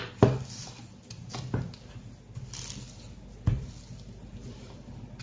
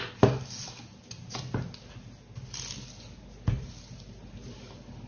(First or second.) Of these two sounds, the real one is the second